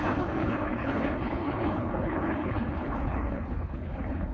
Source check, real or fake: fake